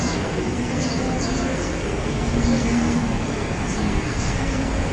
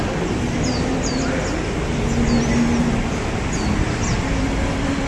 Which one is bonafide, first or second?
second